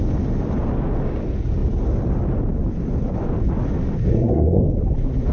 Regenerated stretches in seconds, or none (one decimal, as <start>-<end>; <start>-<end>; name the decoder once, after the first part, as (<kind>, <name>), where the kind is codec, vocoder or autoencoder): 4.1-4.6 (codec, SNAC)